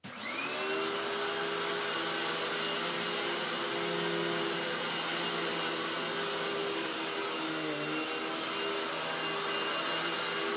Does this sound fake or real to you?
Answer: real